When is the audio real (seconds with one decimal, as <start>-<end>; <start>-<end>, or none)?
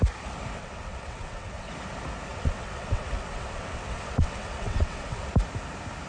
0.0-0.6; 1.7-2.3; 5.3-6.1